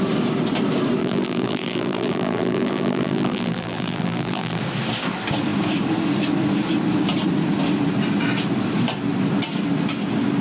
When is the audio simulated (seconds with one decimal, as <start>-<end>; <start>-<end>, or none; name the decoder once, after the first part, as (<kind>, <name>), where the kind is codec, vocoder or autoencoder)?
1.0-4.6 (vocoder, BigVGAN v2)